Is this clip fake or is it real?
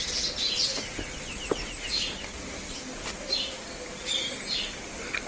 real